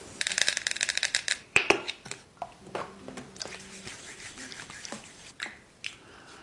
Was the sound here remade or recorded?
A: remade